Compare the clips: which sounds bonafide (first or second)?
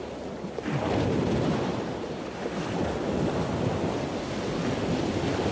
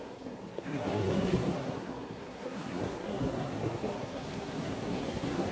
first